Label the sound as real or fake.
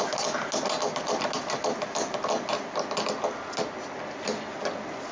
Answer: real